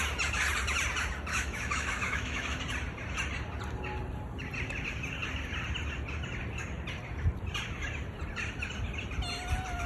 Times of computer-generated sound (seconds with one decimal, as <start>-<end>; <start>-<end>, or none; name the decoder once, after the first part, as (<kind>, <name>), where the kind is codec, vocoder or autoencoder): 1.3-2.6 (autoencoder, DAC-VAE)